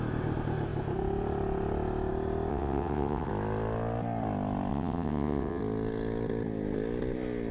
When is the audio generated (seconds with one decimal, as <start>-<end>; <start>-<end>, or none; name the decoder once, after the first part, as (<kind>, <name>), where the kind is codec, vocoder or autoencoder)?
2.5-3.3 (vocoder, WaveNeXt); 4.7-5.6